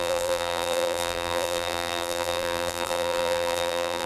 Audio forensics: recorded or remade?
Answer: remade